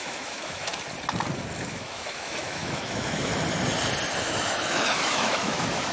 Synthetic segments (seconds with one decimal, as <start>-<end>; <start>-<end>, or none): 0.0-0.7; 1.7-3.3; 4.2-5.9

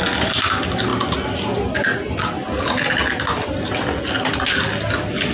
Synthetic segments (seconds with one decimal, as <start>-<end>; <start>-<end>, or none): none

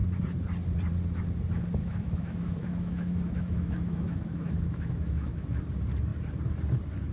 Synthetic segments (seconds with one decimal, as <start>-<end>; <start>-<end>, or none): 1.8-5.6

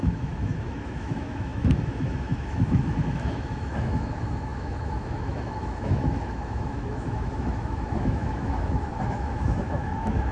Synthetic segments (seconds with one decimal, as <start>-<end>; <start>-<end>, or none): 0.0-10.3

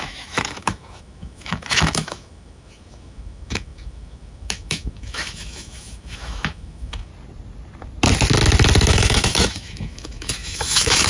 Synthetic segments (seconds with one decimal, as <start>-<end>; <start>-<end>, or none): 0.0-7.1; 8.9-11.1

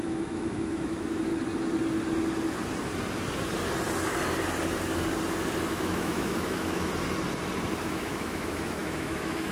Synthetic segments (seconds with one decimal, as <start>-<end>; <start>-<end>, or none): 0.0-1.3; 5.7-6.9; 7.8-9.5

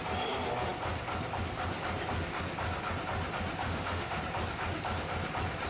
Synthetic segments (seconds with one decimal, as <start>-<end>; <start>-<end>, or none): 3.6-4.2

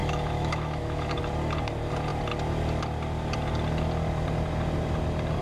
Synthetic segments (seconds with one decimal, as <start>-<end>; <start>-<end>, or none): 0.0-1.2